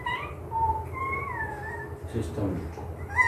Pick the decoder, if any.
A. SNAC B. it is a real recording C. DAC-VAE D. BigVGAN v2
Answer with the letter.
B